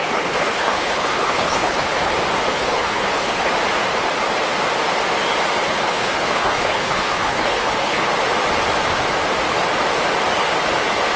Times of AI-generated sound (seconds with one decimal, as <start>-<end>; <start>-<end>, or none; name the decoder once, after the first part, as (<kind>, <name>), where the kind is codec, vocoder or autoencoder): 0.0-2.1 (codec, HILCodec); 2.5-3.5; 5.6-8.1